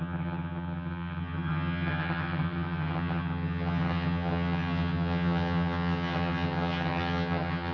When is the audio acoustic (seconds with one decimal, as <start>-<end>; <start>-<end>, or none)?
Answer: none